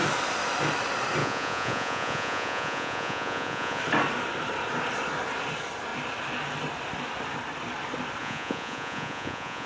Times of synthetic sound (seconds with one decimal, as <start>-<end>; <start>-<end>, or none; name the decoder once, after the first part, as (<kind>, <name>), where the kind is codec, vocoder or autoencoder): 1.2-3.8 (vocoder, Vocos); 8.2-9.7